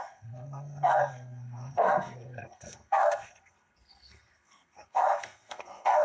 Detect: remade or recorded remade